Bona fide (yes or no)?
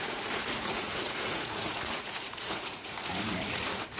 no